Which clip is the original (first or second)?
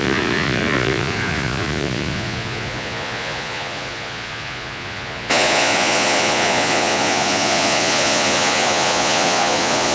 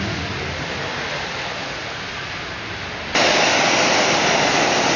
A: second